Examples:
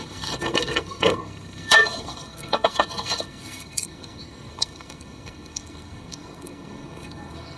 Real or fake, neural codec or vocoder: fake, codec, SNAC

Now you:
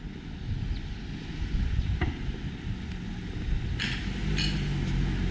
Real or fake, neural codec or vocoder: real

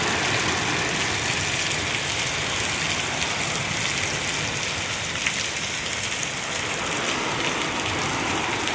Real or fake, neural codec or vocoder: real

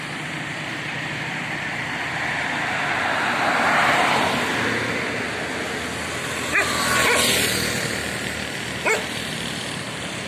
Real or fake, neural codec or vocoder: real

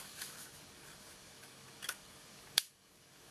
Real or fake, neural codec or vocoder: fake, codec, DAC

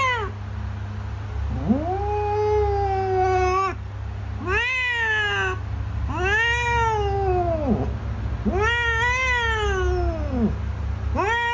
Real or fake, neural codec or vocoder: real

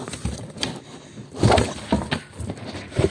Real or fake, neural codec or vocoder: real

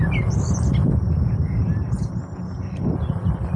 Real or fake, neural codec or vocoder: real